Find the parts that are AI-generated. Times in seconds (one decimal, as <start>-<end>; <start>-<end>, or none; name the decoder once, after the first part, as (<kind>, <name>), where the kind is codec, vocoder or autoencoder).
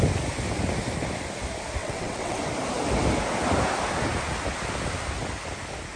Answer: 1.8-2.4 (vocoder, WaveNeXt)